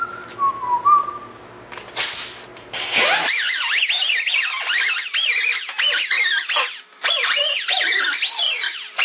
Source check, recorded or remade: recorded